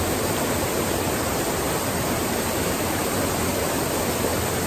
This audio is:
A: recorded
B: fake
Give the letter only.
A